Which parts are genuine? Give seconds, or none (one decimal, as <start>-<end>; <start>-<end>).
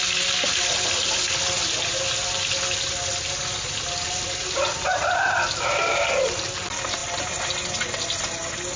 0.0-8.8